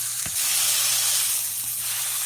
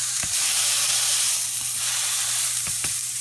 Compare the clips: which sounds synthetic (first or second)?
second